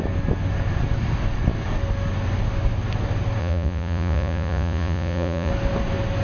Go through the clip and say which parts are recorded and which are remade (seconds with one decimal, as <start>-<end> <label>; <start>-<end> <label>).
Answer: 0.0-3.4 recorded; 3.4-5.5 remade; 5.5-6.2 recorded